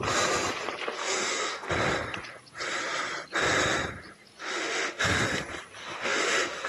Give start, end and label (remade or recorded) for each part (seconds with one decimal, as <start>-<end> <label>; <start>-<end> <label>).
0.0-1.0 recorded; 1.0-1.7 remade; 1.7-4.4 recorded; 4.4-5.2 remade; 5.2-5.8 recorded; 5.8-6.7 remade

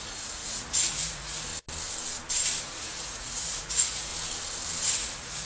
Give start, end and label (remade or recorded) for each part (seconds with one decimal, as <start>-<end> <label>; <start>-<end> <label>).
0.0-1.5 remade; 1.5-2.6 recorded; 2.6-4.1 remade; 4.1-4.9 recorded; 4.9-5.5 remade

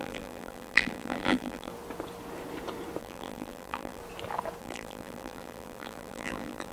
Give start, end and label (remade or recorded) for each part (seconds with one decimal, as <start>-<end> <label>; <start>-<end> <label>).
0.0-1.7 remade; 1.7-3.0 recorded; 3.0-4.0 remade; 4.0-4.6 recorded; 4.6-6.7 remade

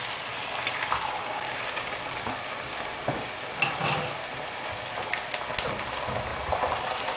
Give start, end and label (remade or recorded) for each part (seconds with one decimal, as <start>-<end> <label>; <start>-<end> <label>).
0.0-1.2 recorded; 1.2-1.9 remade; 1.9-7.2 recorded

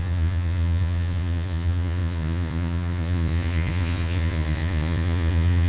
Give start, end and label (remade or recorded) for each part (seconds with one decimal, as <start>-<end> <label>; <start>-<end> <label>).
0.0-5.7 remade

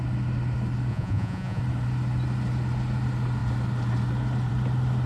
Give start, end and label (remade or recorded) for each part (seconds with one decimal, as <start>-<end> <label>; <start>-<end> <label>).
0.0-0.9 recorded; 0.9-1.6 remade; 1.6-5.1 recorded